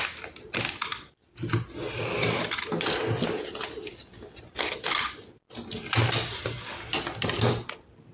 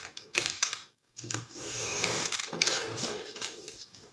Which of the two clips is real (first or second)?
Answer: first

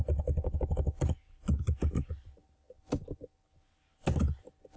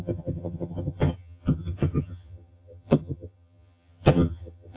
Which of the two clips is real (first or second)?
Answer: first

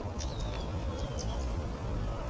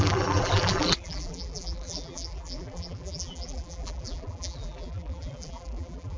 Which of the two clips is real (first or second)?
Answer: first